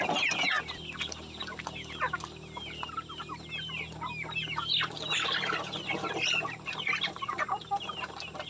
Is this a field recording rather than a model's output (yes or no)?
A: yes